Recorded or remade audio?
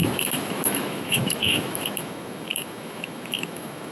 remade